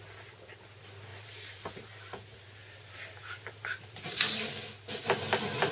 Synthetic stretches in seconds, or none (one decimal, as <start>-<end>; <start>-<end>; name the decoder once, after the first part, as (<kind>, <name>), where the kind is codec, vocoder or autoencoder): 1.1-4.5 (vocoder, BigVGAN v2)